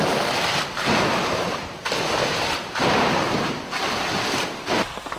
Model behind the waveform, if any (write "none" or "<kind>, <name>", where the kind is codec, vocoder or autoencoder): vocoder, BigVGAN v2